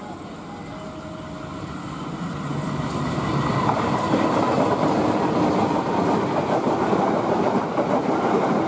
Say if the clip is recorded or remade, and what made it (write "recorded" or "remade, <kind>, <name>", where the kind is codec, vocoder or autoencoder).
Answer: recorded